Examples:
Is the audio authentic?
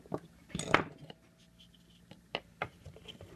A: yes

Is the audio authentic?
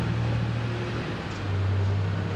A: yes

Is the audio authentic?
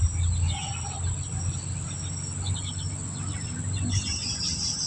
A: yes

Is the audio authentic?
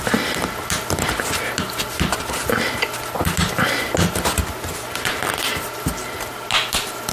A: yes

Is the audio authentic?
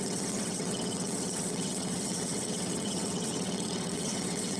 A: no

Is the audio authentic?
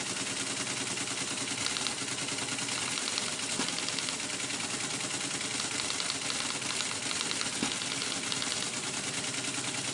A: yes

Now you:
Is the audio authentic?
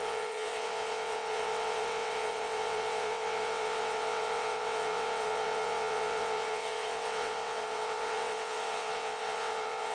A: no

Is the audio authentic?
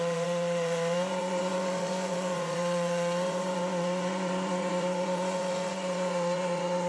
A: no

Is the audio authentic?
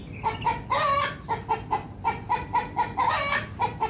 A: yes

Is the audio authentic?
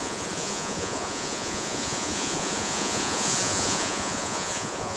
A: no